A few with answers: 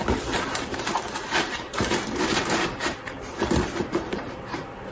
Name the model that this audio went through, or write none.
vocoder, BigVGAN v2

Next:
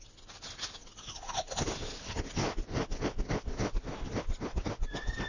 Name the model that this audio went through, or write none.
none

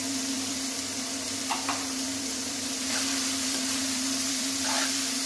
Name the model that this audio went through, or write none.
vocoder, BigVGAN v2